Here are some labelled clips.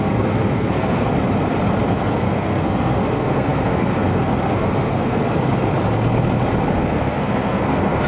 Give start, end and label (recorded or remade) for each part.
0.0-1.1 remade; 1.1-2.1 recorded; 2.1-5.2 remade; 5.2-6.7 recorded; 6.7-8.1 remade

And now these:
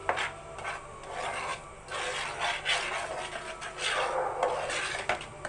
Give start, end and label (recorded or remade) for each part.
0.0-5.5 recorded

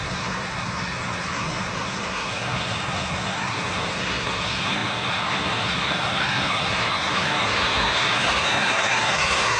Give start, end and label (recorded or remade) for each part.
0.0-9.6 remade